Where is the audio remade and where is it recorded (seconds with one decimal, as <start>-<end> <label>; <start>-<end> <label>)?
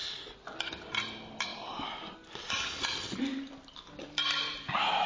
0.0-1.5 recorded; 1.5-2.5 remade; 2.5-3.3 recorded; 3.3-5.1 remade